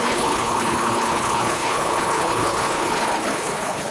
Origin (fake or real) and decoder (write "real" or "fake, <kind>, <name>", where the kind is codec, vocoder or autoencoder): fake, codec, HILCodec